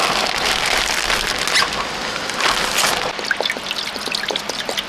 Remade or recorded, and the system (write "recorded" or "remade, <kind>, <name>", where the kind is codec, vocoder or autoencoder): recorded